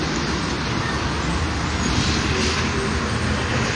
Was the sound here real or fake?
real